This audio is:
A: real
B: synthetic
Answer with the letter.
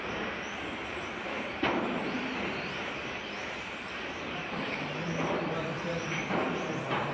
B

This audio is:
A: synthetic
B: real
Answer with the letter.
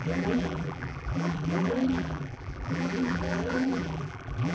A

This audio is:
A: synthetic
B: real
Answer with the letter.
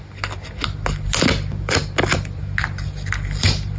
B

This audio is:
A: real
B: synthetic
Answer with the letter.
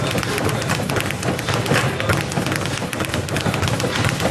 A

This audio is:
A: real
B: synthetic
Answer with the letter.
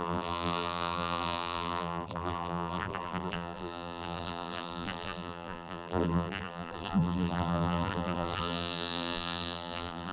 B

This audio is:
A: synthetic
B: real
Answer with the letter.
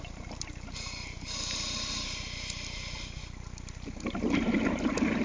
B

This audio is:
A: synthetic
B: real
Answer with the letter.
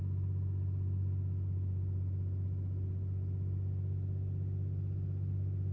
B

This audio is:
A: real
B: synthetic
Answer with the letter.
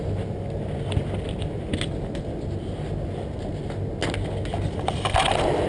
A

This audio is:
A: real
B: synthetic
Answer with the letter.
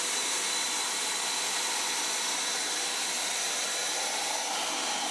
A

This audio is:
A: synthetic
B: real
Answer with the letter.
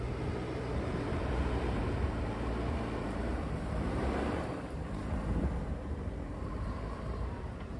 A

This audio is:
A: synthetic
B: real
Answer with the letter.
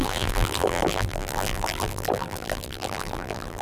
A